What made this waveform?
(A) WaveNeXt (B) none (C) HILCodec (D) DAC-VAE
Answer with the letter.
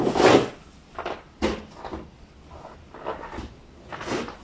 B